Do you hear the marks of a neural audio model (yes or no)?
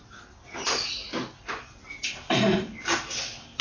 no